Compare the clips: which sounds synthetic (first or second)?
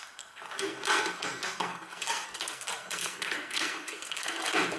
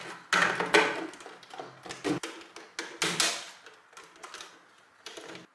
first